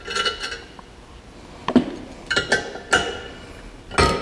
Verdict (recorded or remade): recorded